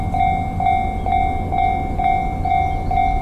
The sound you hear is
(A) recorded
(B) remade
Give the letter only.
A